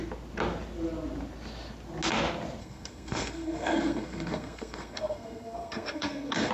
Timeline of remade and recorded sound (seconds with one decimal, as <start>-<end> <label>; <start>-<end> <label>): 0.0-2.6 recorded; 2.6-6.5 remade